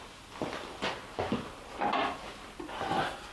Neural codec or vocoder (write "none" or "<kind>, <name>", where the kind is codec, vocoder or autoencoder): none